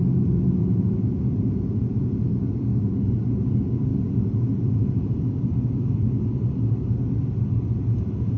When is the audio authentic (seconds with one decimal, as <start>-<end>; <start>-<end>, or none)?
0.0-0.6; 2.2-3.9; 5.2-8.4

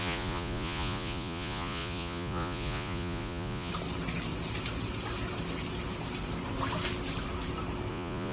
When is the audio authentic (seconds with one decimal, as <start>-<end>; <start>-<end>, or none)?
3.7-7.9

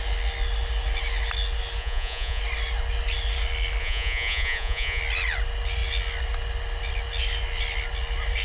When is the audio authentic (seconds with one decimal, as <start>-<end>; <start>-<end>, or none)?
0.0-1.8; 2.4-3.8; 5.0-8.4

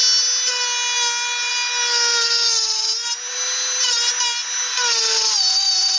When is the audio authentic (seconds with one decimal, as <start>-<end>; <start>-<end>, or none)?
0.0-6.0

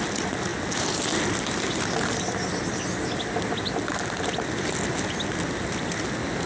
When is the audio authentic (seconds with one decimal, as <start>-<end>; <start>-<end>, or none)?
0.0-6.5